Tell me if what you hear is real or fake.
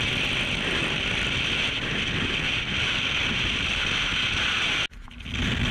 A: real